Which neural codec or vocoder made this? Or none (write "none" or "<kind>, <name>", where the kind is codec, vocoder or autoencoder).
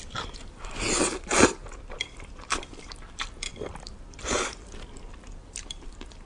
vocoder, BigVGAN v2